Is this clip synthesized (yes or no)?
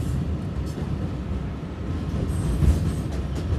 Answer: no